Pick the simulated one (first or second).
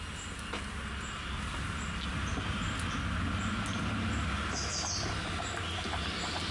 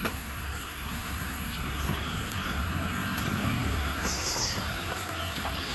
second